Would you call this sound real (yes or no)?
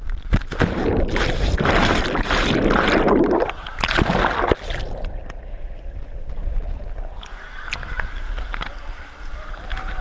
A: yes